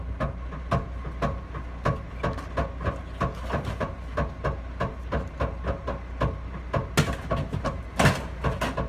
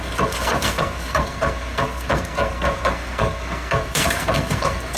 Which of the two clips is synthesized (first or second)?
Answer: second